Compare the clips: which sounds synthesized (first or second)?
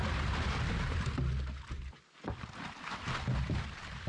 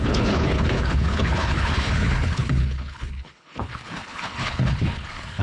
second